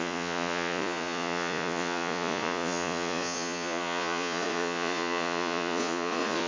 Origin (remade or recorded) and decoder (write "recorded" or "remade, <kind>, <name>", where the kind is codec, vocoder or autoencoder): remade, vocoder, Vocos